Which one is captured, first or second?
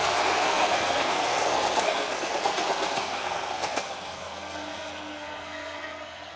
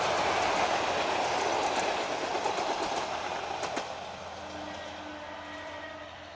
second